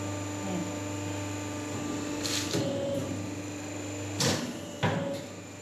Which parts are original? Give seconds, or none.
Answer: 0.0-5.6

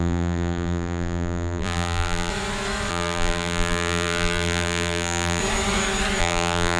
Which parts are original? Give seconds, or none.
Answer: 2.3-2.9; 5.4-6.2

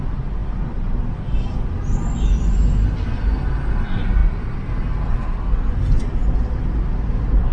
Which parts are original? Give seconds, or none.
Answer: 0.0-7.5

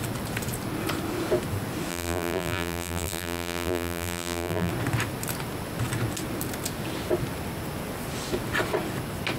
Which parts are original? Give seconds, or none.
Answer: 0.0-1.9; 4.7-9.4

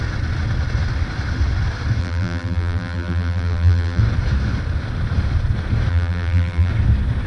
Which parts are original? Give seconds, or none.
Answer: 0.0-2.0; 4.0-5.9; 6.7-7.3

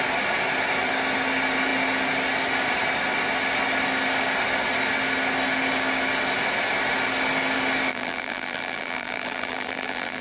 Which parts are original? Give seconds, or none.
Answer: 0.0-7.9